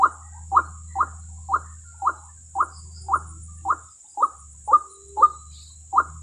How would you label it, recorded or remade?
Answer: recorded